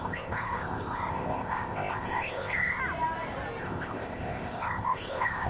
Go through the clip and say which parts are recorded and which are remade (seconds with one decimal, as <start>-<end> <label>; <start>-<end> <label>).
0.0-2.8 remade; 2.8-3.6 recorded; 3.6-5.5 remade